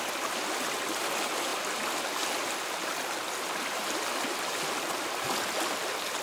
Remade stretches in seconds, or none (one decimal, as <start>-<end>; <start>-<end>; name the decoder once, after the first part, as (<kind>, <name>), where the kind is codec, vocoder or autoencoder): none